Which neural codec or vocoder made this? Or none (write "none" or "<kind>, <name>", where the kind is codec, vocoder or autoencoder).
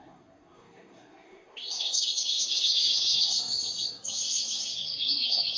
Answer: codec, SNAC